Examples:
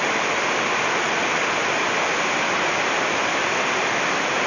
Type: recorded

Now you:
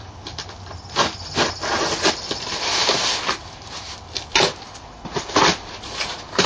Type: recorded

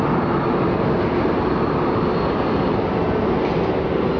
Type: recorded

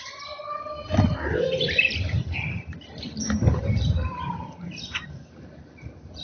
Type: remade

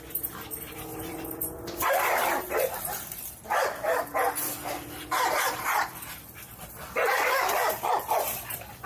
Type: remade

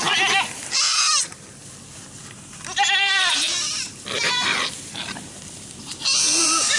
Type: remade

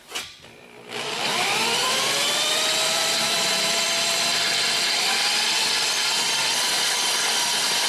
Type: remade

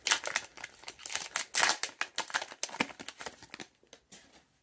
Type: recorded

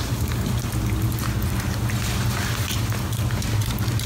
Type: recorded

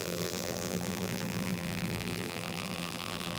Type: remade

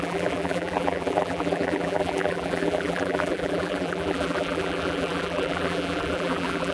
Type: remade